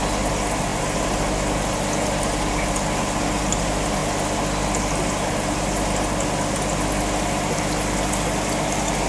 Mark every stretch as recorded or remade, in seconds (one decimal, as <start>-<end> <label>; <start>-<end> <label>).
0.0-9.1 recorded